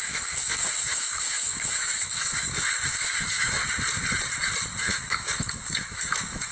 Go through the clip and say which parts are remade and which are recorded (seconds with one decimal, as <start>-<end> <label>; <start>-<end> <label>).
0.0-3.6 remade; 3.6-4.8 recorded; 4.8-6.5 remade